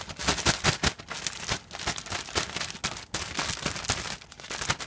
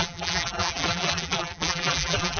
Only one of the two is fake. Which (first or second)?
second